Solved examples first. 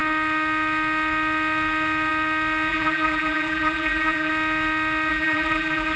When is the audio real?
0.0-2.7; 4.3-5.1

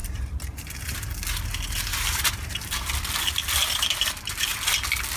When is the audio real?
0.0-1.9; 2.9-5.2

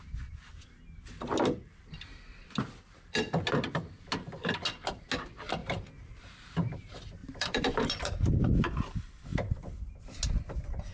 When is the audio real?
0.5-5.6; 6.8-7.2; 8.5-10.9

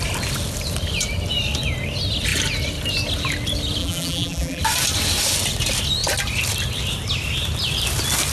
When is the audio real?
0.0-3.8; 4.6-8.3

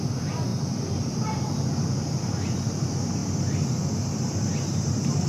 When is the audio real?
0.0-5.3